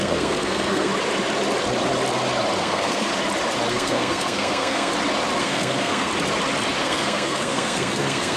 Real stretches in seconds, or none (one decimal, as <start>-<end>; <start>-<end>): 0.9-2.6; 3.1-3.7; 4.9-5.4; 6.1-6.8